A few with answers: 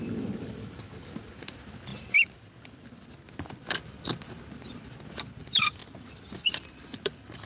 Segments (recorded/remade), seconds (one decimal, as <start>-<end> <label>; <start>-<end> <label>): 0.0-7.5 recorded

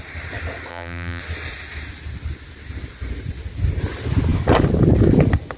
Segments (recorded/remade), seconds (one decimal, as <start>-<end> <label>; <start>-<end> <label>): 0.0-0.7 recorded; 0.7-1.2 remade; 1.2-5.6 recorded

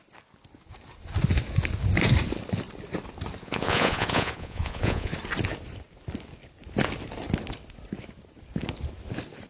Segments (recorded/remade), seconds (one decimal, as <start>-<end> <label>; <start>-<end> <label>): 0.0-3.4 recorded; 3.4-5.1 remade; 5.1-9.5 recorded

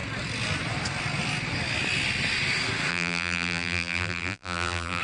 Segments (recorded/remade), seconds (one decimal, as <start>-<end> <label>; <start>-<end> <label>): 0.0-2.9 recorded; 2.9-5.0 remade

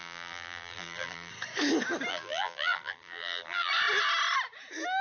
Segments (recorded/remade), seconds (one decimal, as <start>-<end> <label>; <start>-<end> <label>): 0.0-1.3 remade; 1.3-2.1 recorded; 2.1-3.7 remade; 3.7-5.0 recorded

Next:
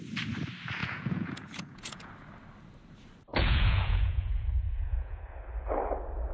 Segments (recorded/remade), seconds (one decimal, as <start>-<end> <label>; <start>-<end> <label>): 0.0-0.8 recorded; 0.8-2.1 remade; 2.1-3.3 recorded; 3.3-5.2 remade; 5.2-6.3 recorded

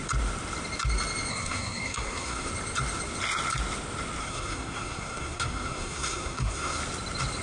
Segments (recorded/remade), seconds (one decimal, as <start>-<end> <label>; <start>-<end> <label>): 0.0-1.3 recorded; 1.3-2.5 remade; 2.5-4.2 recorded; 4.2-6.8 remade; 6.8-7.4 recorded

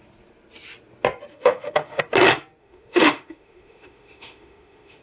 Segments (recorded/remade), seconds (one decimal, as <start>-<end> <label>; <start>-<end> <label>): 0.0-1.3 recorded; 1.3-2.0 remade; 2.0-2.6 recorded; 2.6-5.0 remade